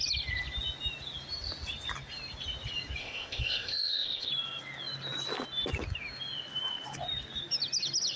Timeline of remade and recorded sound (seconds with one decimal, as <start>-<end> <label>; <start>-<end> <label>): 0.0-3.0 recorded; 3.0-4.3 remade; 4.3-8.2 recorded